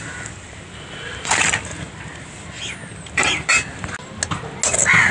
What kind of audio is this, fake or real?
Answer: real